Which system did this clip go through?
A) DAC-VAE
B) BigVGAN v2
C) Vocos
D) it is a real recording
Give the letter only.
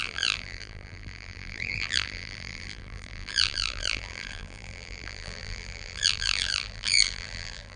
B